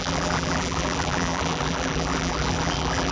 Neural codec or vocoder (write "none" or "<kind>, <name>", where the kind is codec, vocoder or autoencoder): vocoder, BigVGAN v2